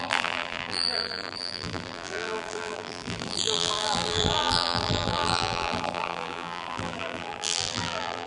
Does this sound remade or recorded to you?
remade